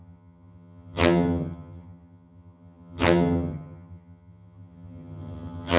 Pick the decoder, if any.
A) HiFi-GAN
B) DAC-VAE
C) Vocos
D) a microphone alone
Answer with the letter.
A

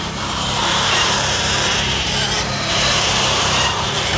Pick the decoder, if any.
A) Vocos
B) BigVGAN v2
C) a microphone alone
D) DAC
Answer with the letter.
B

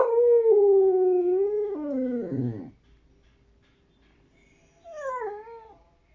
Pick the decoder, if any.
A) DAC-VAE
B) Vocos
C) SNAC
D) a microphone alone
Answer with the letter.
D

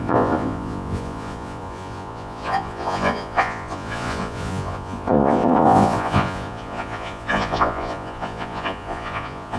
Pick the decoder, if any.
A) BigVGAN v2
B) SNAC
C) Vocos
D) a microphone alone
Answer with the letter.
C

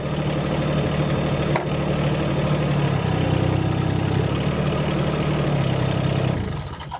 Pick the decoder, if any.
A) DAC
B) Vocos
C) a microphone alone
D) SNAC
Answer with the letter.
C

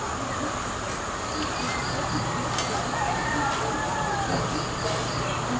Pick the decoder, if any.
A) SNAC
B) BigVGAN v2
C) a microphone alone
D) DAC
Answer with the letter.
C